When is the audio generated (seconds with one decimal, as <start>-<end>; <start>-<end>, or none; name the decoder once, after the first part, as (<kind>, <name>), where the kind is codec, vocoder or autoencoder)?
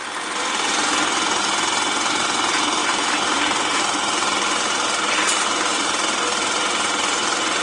2.8-7.6 (vocoder, BigVGAN v2)